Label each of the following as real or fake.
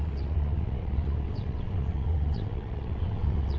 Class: fake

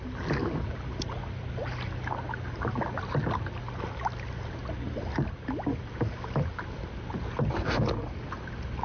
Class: real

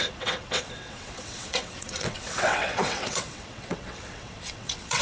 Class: fake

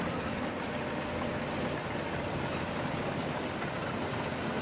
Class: real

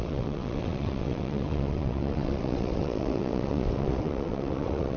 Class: fake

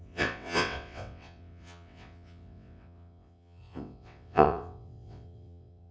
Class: fake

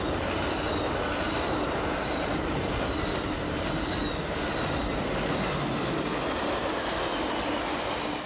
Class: real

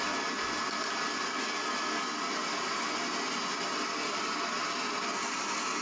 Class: real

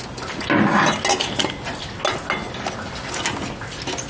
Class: real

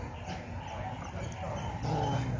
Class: real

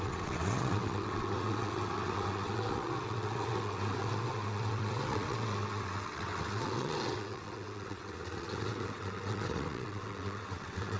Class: fake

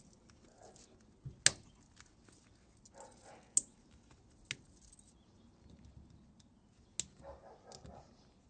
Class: real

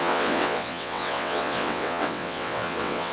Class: fake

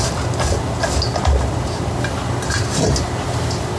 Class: real